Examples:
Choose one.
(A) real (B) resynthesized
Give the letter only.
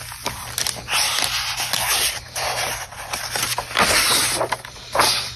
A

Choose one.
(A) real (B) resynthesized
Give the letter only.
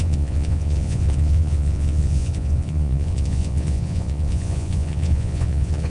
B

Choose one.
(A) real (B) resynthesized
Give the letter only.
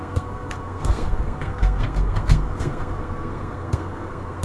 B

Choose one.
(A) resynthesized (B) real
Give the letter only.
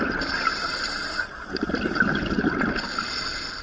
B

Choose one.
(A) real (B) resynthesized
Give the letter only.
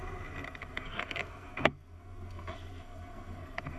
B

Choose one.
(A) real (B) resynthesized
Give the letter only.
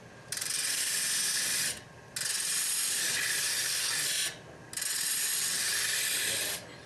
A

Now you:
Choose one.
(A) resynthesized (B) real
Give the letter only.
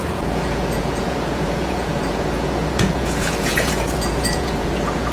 A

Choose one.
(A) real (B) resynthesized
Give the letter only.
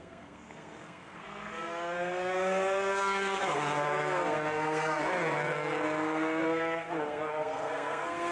B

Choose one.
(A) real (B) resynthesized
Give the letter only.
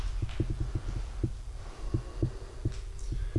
A